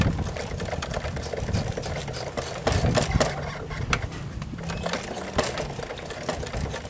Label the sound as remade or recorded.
recorded